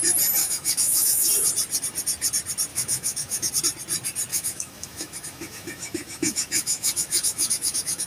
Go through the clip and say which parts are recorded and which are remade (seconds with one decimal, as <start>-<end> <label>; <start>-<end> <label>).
0.0-0.4 recorded; 0.4-1.3 remade; 1.3-2.7 recorded; 2.7-3.5 remade; 3.5-4.3 recorded; 4.3-8.1 remade